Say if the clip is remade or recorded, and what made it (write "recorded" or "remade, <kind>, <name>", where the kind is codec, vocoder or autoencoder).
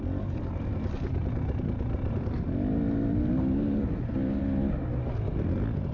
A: recorded